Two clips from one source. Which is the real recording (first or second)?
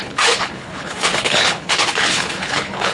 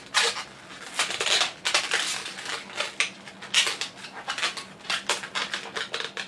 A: second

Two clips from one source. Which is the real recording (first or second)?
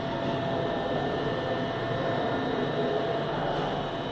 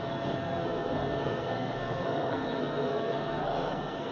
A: first